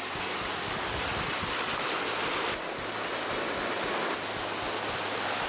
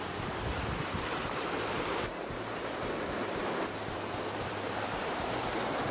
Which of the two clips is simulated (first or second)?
second